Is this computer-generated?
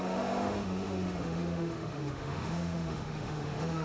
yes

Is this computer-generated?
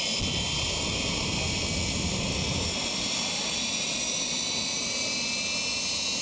no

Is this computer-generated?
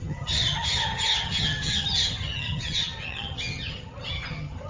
yes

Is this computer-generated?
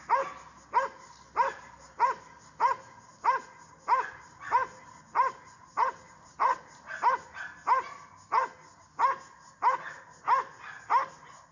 no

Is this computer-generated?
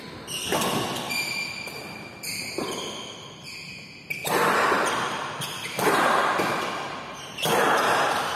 no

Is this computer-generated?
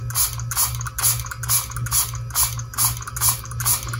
no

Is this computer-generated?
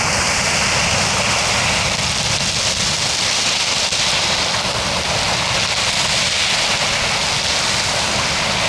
no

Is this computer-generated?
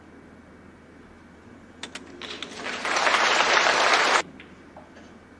no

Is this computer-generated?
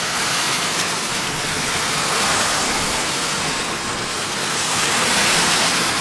yes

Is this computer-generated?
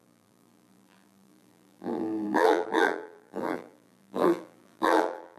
yes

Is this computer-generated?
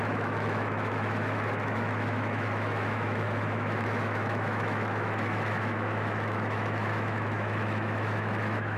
yes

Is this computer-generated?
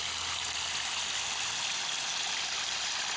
no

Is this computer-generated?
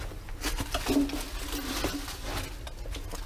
no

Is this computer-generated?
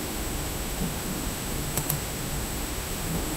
yes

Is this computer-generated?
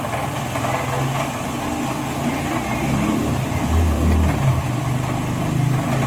no